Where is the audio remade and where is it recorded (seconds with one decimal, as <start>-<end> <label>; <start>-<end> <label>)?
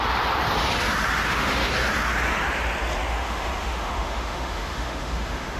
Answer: 0.0-1.2 recorded; 1.2-1.7 remade; 1.7-3.1 recorded; 3.1-5.6 remade